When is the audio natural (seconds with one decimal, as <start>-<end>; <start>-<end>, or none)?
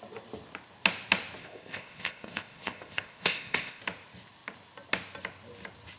0.0-1.4; 3.8-6.0